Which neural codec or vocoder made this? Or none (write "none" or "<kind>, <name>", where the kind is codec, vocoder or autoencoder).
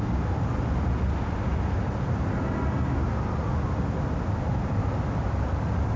none